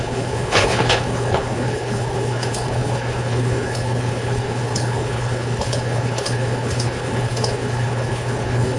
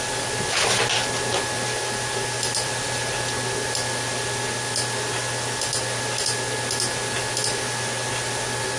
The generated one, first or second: first